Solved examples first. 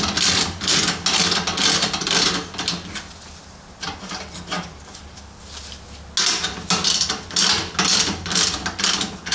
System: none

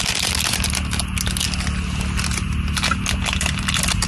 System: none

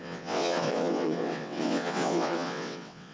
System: vocoder, WaveNeXt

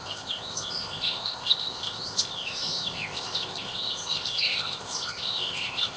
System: codec, ZipCodec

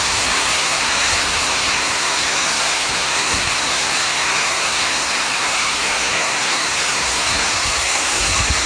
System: codec, SNAC